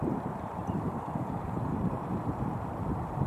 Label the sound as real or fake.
fake